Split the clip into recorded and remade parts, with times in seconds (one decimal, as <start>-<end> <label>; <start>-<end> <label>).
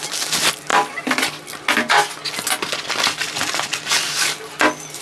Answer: 0.0-0.7 recorded; 0.7-1.5 remade; 1.5-5.0 recorded